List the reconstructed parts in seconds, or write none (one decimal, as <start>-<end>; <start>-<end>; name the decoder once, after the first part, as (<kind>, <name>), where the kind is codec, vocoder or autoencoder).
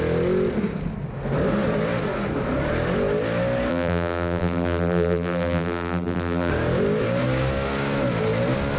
3.7-6.5 (vocoder, BigVGAN v2)